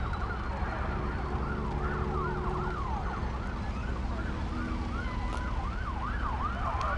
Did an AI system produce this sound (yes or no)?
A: no